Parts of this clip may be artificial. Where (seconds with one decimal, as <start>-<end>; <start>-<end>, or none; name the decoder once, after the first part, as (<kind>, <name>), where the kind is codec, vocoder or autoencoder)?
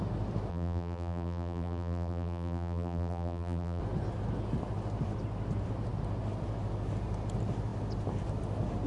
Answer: 0.5-3.8 (vocoder, BigVGAN v2)